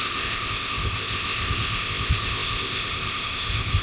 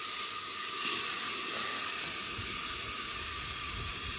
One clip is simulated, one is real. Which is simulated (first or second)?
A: first